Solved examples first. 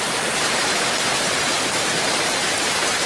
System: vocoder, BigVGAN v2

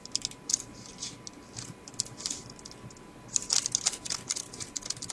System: none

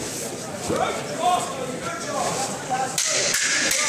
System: none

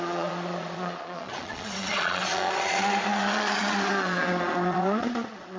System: vocoder, Vocos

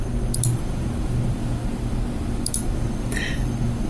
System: vocoder, BigVGAN v2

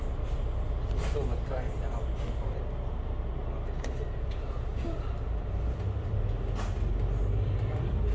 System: none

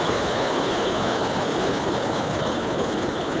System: codec, HILCodec